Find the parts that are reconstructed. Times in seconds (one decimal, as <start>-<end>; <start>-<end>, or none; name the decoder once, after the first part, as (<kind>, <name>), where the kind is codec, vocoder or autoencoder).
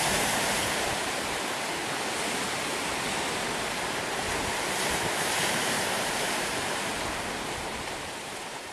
0.0-1.8 (vocoder, BigVGAN v2); 5.2-6.9; 8.2-8.7